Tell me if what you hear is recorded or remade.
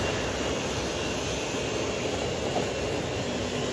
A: recorded